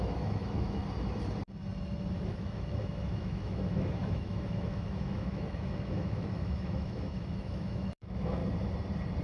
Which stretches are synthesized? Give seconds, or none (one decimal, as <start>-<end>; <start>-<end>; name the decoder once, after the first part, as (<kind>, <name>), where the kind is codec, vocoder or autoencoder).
0.0-0.8 (autoencoder, DAC-VAE); 2.1-8.4